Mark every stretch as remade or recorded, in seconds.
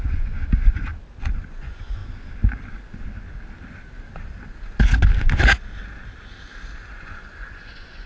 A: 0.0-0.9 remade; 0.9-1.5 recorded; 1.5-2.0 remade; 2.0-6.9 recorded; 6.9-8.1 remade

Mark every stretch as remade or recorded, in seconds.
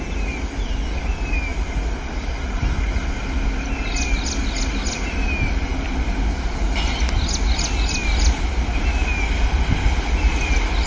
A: 0.0-10.9 recorded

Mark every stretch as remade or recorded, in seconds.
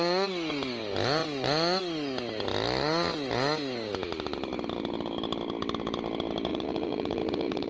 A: 0.0-6.5 recorded; 6.5-7.7 remade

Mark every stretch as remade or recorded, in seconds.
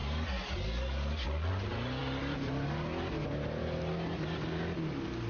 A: 0.0-5.3 recorded